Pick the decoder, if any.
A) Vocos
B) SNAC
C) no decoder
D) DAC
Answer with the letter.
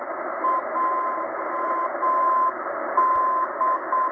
C